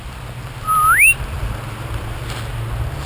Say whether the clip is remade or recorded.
recorded